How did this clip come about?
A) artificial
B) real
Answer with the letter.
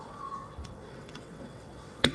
A